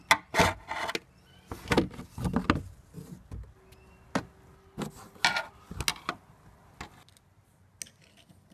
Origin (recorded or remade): recorded